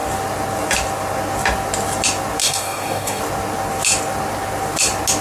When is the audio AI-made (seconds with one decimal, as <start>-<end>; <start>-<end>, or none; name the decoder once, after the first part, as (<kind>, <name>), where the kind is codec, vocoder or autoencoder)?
2.4-3.2 (codec, DAC)